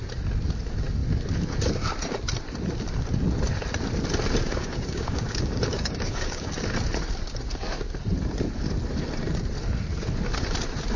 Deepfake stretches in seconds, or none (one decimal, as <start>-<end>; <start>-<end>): 4.5-6.5